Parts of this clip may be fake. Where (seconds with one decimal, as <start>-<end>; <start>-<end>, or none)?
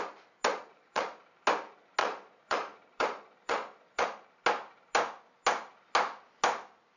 0.5-1.2; 2.0-4.3